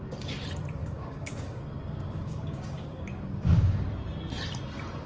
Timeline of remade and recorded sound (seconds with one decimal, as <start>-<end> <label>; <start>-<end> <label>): 0.0-0.8 recorded; 0.8-3.9 remade; 3.9-5.1 recorded